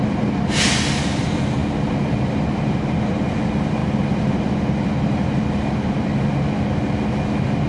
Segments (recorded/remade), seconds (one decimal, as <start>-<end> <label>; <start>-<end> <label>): 0.0-7.7 recorded